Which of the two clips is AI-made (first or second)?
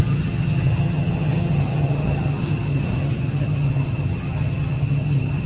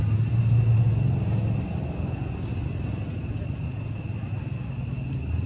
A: first